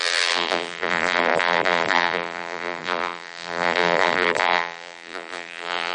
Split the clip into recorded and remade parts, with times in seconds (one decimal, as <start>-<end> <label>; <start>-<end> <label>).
0.0-5.9 remade